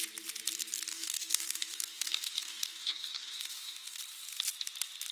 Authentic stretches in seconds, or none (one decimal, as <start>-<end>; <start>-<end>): 0.0-0.9; 4.0-5.1

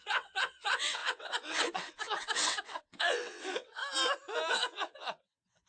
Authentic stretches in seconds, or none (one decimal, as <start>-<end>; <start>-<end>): 3.8-4.5